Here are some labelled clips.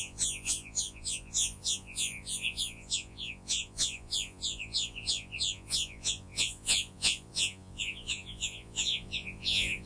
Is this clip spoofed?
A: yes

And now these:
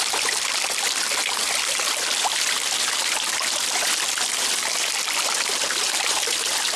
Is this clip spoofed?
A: yes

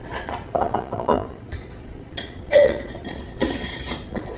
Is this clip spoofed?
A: yes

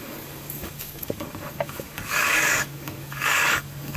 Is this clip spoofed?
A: yes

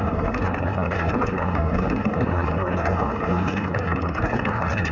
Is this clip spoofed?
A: yes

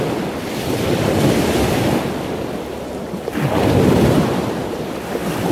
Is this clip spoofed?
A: no